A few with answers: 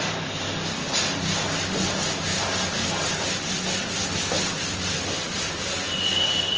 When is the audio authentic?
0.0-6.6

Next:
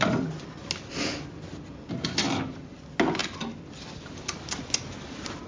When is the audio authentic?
0.0-5.5

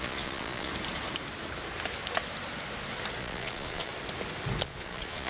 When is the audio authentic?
0.7-3.2; 3.9-4.6

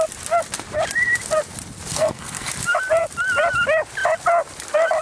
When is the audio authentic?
0.0-1.9; 2.5-5.0

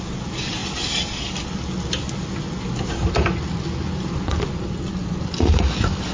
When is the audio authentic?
0.0-6.1

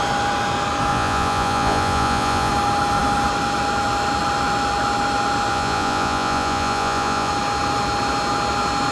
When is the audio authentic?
0.0-0.9; 2.5-5.5; 7.3-8.9

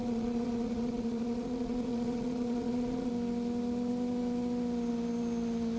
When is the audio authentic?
3.1-5.8

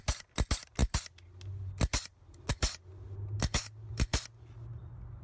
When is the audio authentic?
0.0-5.2